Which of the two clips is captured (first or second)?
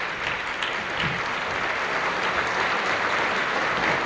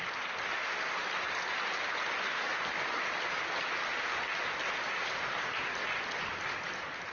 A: second